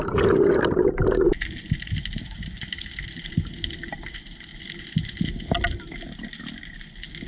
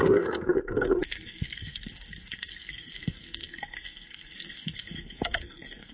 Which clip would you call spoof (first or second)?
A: second